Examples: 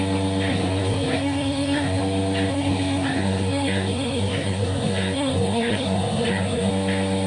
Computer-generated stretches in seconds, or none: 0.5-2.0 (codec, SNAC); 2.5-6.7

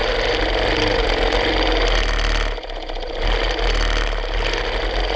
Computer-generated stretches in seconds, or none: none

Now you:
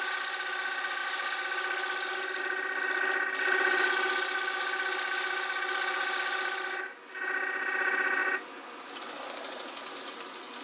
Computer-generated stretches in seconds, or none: none

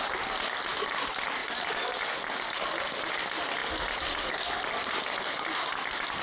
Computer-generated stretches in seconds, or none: none

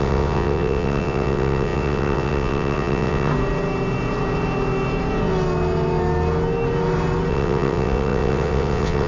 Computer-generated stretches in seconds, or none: 0.0-3.3 (vocoder, WaveNeXt); 7.3-9.1